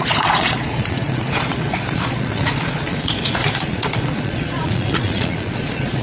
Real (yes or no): no